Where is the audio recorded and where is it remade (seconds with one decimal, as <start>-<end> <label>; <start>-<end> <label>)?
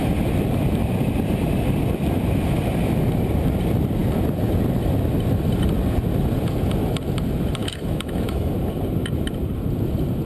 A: 0.0-7.6 recorded; 7.6-8.5 remade; 8.5-10.3 recorded